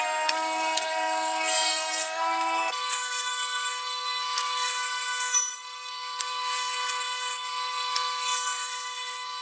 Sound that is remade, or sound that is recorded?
remade